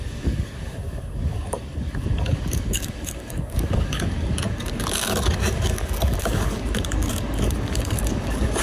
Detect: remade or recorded remade